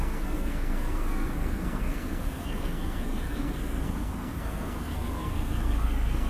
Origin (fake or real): fake